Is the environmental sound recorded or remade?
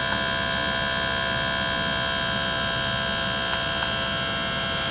recorded